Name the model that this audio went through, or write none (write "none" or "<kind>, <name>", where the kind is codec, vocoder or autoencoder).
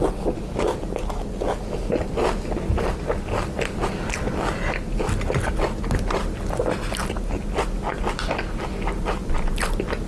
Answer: none